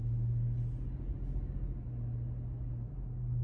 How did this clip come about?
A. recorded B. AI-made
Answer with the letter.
A